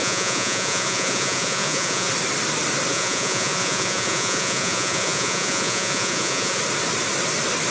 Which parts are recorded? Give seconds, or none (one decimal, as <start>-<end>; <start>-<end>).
2.1-2.9; 6.6-7.7